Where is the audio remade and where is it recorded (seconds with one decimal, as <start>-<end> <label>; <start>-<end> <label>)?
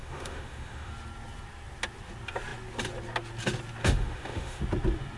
0.0-0.9 remade; 0.9-3.8 recorded; 3.8-4.6 remade; 4.6-5.2 recorded